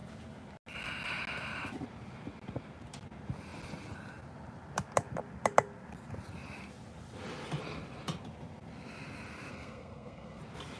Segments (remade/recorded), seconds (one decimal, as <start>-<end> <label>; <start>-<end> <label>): 0.0-9.5 recorded; 9.5-10.4 remade; 10.4-10.8 recorded

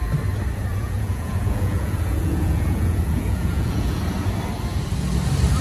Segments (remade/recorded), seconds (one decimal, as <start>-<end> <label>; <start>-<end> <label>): 0.0-0.7 recorded; 0.7-4.0 remade; 4.0-5.6 recorded

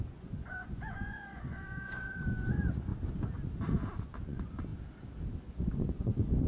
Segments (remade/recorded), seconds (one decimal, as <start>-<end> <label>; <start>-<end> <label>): 0.0-2.9 remade; 2.9-4.0 recorded; 4.0-4.7 remade; 4.7-5.3 recorded; 5.3-6.5 remade

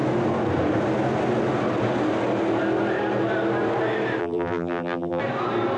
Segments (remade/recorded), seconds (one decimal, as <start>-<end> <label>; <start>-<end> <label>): 0.0-4.2 recorded; 4.2-5.2 remade; 5.2-5.8 recorded

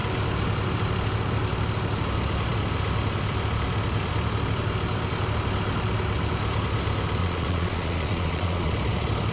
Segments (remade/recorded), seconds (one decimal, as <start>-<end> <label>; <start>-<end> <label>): 0.0-7.2 recorded; 7.2-8.7 remade; 8.7-9.3 recorded